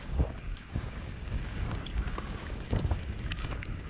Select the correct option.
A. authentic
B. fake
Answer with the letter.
B